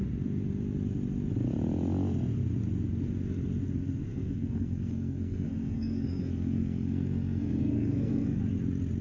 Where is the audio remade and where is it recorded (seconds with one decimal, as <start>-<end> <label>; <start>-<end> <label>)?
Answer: 0.0-4.1 recorded; 4.1-8.4 remade; 8.4-9.0 recorded